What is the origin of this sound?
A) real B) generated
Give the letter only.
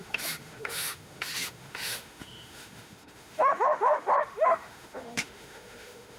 B